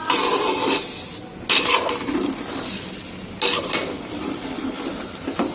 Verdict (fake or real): real